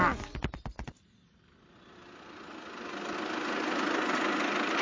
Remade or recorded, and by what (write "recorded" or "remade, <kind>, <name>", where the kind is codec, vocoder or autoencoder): recorded